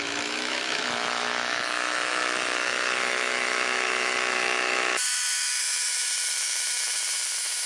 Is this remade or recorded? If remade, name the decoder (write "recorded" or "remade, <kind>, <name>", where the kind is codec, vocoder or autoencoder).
remade, autoencoder, DAC-VAE